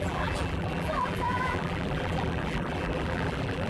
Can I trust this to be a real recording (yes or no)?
no